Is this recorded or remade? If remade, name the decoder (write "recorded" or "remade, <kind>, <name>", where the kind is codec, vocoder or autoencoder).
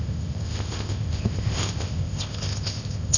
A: remade, codec, ZipCodec